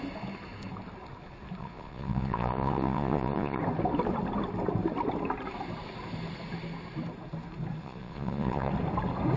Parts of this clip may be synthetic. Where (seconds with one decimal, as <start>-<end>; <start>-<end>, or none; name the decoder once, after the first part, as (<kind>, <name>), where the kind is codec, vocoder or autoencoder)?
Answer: 1.6-3.6 (vocoder, Vocos); 7.8-8.7